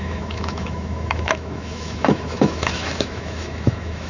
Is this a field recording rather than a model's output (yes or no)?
no